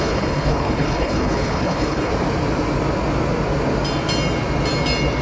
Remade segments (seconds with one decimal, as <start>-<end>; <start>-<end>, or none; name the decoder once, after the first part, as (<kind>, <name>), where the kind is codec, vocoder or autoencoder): 0.0-2.1 (codec, HILCodec)